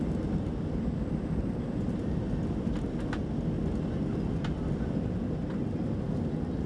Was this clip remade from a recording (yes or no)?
no